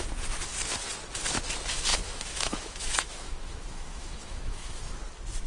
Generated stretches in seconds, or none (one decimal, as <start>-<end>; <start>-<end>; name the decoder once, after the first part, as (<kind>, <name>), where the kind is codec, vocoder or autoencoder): 1.9-4.9 (autoencoder, DAC-VAE)

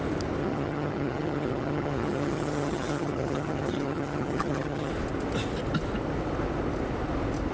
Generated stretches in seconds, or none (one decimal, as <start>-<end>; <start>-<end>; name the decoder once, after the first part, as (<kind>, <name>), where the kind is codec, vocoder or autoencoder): 0.4-4.9 (vocoder, HiFi-GAN)

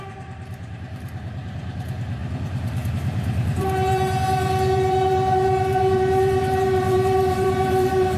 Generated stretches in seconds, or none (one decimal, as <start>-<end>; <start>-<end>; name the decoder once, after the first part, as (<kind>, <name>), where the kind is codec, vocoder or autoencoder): 0.0-8.2 (vocoder, BigVGAN v2)